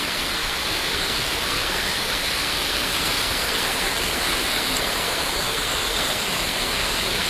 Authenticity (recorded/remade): remade